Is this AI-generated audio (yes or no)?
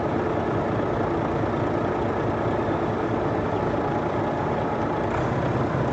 no